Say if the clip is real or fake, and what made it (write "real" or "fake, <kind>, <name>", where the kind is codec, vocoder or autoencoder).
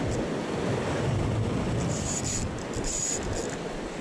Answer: real